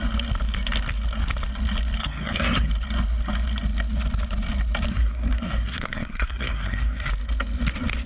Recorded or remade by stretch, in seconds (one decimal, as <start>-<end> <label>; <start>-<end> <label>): 0.0-2.0 recorded; 2.0-2.7 remade; 2.7-4.9 recorded; 4.9-7.1 remade; 7.1-8.1 recorded